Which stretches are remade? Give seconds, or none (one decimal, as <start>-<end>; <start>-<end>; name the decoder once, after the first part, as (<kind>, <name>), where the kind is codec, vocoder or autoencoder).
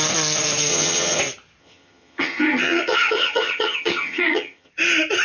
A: 0.7-1.2 (vocoder, HiFi-GAN); 1.6-4.7